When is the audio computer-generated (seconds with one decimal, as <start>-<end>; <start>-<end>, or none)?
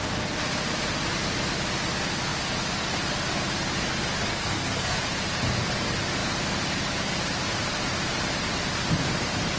4.3-5.0